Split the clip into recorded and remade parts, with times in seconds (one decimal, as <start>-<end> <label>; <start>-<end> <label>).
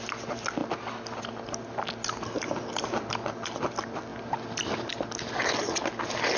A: 0.0-6.4 recorded